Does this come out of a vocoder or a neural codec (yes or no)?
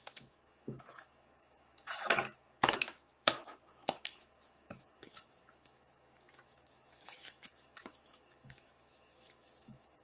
yes